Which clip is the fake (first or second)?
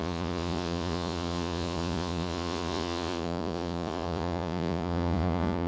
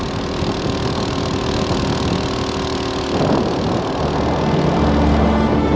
first